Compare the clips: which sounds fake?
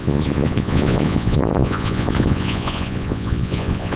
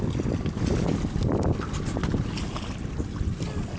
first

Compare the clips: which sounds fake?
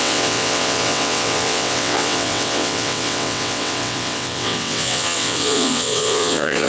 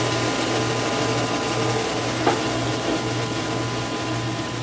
first